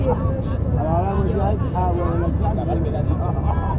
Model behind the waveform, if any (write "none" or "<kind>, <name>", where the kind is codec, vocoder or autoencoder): none